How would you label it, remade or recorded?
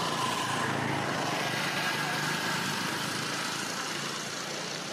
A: recorded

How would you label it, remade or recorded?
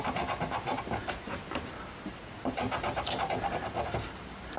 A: remade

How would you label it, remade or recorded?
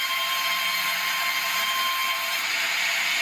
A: recorded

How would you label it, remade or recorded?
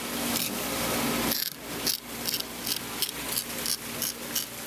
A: recorded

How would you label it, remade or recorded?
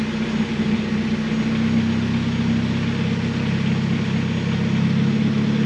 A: recorded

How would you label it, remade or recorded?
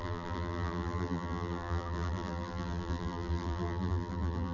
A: remade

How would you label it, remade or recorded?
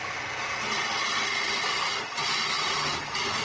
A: recorded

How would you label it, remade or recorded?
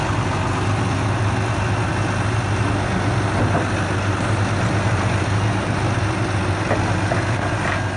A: recorded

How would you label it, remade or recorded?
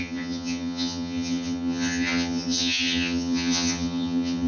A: remade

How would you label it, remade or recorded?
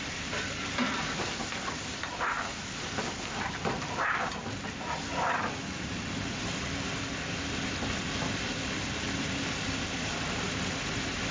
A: recorded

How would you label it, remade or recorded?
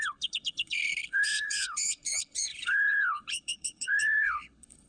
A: remade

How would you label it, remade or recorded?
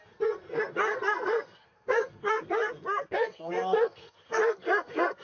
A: remade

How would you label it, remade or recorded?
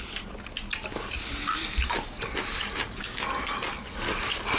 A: recorded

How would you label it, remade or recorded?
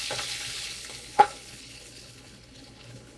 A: remade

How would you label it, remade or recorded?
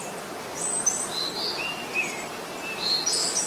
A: recorded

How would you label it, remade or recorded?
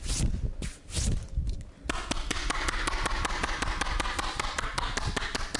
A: recorded